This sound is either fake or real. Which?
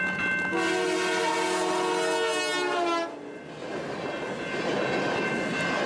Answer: real